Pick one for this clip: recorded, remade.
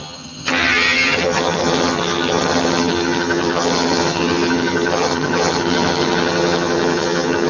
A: remade